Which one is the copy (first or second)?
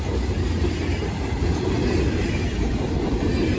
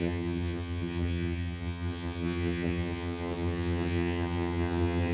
second